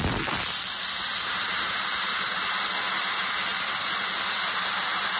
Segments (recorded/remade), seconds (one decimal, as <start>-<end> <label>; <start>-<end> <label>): 0.0-5.2 recorded